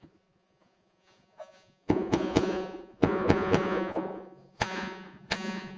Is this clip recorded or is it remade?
remade